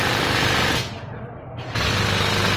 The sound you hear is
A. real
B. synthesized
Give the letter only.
A